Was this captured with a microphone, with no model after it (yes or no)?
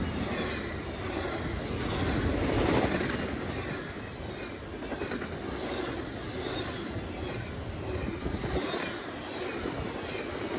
yes